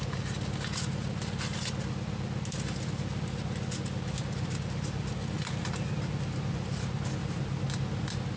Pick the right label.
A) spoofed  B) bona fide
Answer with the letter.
B